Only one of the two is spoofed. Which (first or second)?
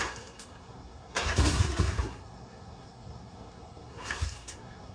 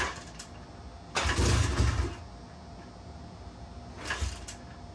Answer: first